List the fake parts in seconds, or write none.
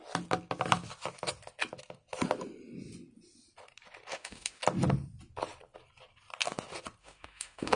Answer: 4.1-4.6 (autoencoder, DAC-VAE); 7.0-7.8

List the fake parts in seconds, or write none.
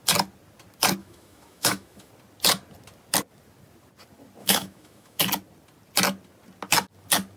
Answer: 1.0-2.1 (autoencoder, DAC-VAE); 4.4-5.2